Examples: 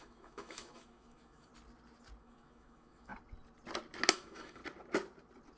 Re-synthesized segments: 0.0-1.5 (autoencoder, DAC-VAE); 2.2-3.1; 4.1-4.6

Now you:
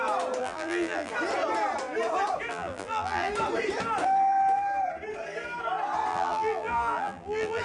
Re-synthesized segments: 0.4-1.1 (vocoder, BigVGAN v2); 2.5-3.3; 6.1-7.6

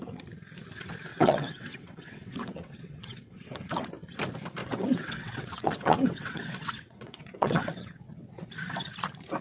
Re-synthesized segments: 1.1-3.9 (vocoder, WaveNeXt); 4.6-8.5

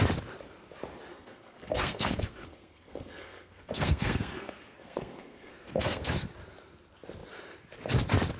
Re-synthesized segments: 1.1-6.1 (codec, SNAC)